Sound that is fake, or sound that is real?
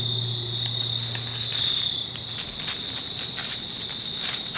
real